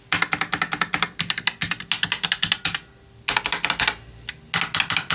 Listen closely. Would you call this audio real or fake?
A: real